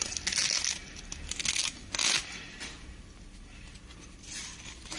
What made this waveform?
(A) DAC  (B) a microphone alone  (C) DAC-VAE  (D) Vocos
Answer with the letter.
B